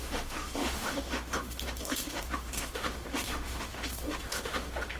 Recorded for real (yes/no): no